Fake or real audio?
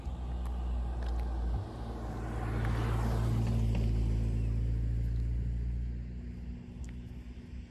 real